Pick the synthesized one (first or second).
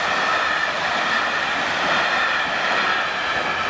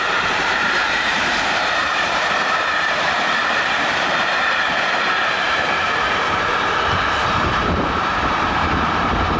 second